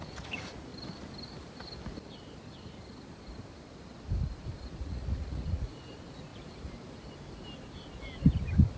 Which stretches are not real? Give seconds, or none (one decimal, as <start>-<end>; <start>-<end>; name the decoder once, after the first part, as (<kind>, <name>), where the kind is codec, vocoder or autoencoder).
0.0-0.7 (vocoder, Vocos); 4.8-6.3